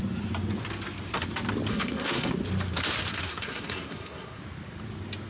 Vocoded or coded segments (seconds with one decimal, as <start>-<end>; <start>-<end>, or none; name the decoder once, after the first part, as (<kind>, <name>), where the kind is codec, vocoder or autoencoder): 1.7-2.3 (codec, SNAC); 3.1-4.4